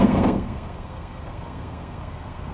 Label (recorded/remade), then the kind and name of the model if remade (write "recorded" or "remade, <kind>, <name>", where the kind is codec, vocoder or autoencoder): remade, codec, SNAC